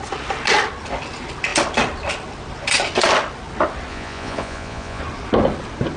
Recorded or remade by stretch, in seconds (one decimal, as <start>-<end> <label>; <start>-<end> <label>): 0.0-3.9 recorded; 3.9-5.0 remade; 5.0-6.0 recorded